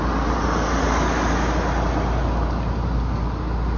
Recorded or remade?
recorded